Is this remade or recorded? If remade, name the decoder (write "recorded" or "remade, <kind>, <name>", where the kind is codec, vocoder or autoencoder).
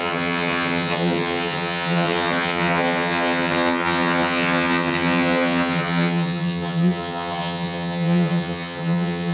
remade, vocoder, HiFi-GAN